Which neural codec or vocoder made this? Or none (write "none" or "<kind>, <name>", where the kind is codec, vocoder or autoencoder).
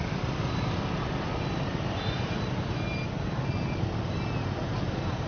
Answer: none